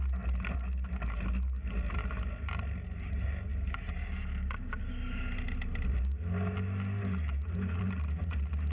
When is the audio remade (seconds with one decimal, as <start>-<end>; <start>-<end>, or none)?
none